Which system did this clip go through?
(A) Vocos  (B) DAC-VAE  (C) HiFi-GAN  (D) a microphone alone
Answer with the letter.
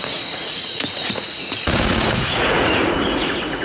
A